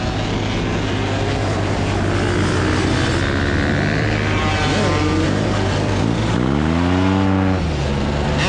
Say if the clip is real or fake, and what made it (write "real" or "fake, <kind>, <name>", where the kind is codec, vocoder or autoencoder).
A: real